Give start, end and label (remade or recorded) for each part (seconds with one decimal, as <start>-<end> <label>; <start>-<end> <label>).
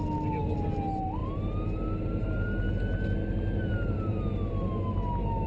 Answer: 0.0-5.5 recorded